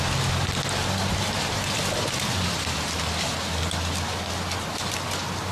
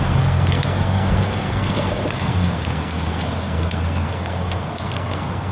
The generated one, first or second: second